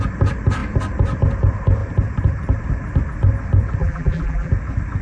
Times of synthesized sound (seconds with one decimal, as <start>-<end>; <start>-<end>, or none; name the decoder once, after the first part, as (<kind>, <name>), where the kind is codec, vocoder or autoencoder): 3.8-4.5 (vocoder, BigVGAN v2)